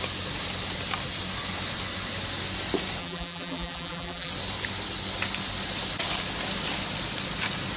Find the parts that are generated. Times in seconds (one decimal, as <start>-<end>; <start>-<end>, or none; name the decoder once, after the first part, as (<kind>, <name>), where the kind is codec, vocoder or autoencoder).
3.0-4.3 (vocoder, BigVGAN v2)